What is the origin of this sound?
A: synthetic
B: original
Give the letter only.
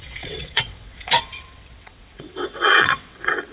A